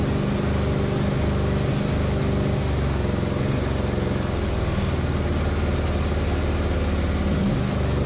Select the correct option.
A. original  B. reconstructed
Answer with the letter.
A